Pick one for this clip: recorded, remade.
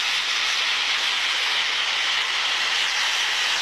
recorded